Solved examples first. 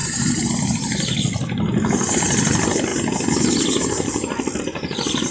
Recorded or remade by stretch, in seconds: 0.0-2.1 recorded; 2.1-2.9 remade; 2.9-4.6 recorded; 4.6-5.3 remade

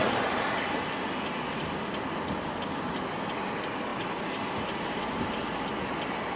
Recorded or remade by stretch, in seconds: 0.0-6.3 recorded